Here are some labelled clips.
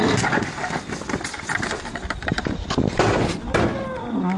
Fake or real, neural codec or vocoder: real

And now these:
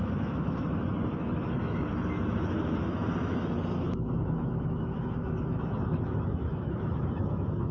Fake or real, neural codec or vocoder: fake, autoencoder, DAC-VAE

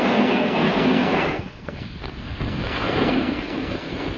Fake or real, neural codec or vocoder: fake, codec, SNAC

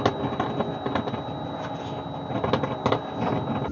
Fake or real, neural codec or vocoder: real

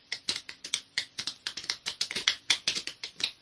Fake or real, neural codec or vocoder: fake, vocoder, Vocos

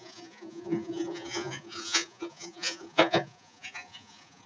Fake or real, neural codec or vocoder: fake, vocoder, Vocos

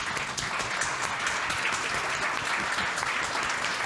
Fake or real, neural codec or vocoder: real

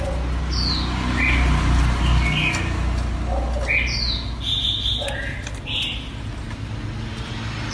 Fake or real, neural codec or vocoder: real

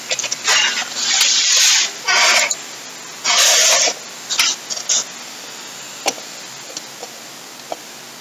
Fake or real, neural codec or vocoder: real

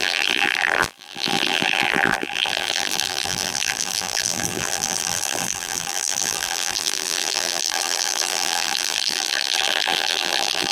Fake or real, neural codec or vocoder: fake, vocoder, BigVGAN v2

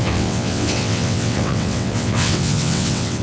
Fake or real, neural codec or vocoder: fake, vocoder, WaveNeXt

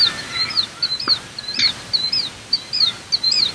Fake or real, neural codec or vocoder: real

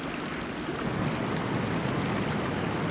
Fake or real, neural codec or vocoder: real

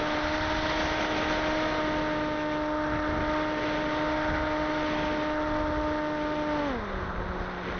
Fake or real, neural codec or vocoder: real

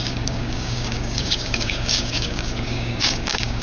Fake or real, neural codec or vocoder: fake, codec, DAC